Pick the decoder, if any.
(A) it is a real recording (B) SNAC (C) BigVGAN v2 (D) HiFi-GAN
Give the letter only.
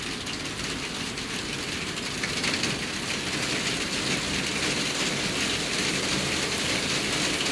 A